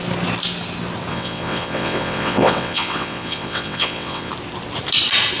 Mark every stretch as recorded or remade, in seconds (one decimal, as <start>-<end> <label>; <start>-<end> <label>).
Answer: 0.0-1.1 recorded; 1.1-4.3 remade; 4.3-5.4 recorded